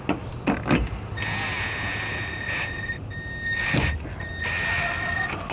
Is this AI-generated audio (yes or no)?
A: no